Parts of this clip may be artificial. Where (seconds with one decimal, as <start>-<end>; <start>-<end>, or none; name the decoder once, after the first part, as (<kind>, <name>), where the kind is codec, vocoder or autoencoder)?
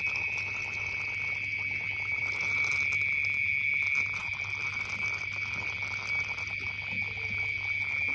none